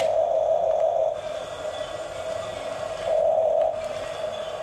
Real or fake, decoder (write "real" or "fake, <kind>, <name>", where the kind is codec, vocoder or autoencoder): real